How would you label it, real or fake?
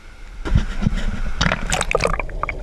real